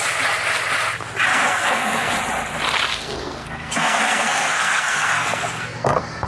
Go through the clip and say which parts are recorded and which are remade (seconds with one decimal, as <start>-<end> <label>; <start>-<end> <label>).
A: 0.0-1.3 recorded; 1.3-2.1 remade; 2.1-2.9 recorded; 2.9-6.3 remade